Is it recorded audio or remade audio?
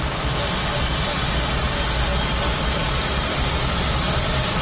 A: recorded